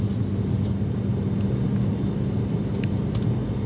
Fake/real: real